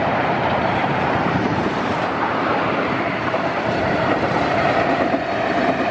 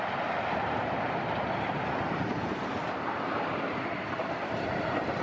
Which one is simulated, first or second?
first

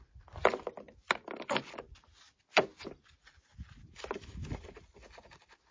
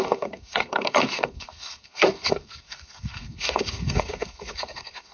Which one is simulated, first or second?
second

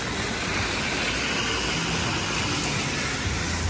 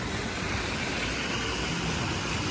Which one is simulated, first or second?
second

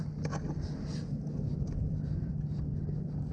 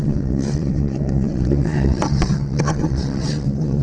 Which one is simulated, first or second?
second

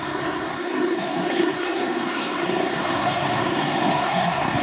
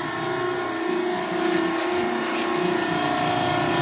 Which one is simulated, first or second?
first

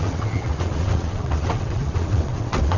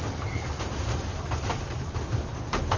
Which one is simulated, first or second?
first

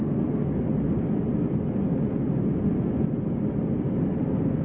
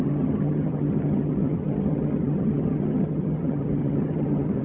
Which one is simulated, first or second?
second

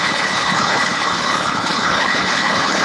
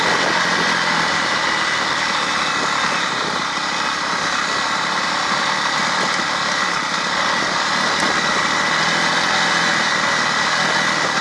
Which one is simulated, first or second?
first